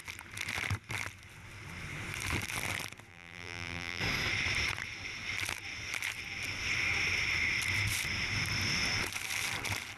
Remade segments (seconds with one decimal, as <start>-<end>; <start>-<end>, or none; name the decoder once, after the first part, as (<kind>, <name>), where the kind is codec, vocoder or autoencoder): 3.1-4.0 (vocoder, BigVGAN v2)